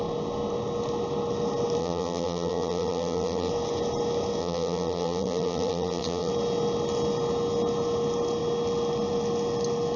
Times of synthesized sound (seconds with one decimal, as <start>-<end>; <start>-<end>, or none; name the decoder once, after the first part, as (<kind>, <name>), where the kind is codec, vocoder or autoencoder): 1.8-3.5 (vocoder, BigVGAN v2); 4.4-6.3

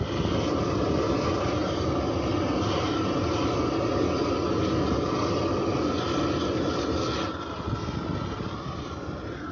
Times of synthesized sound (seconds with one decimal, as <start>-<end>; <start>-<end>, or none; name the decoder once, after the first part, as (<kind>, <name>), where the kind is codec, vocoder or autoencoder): none

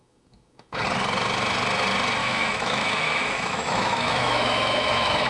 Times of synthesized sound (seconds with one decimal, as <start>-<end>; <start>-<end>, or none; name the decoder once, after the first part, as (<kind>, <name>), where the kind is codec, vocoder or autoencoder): 0.0-0.8 (autoencoder, DAC-VAE); 2.2-5.3